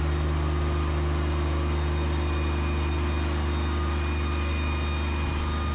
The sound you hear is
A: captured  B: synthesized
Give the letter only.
A